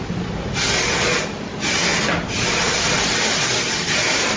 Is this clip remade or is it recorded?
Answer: recorded